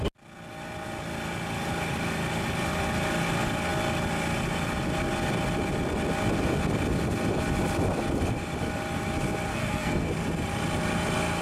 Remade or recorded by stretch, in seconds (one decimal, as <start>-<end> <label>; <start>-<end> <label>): 0.0-9.5 recorded; 9.5-10.1 remade; 10.1-11.4 recorded